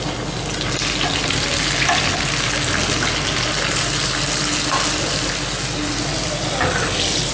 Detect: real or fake real